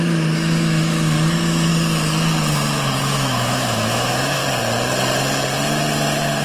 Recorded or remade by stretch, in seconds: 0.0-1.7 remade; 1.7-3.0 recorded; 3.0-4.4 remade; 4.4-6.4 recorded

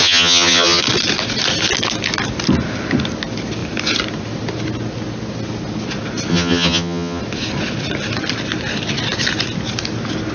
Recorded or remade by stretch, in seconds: 0.0-0.8 remade; 0.8-6.3 recorded; 6.3-7.2 remade; 7.2-10.3 recorded